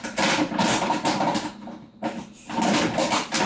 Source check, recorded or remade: recorded